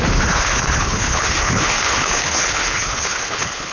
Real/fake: fake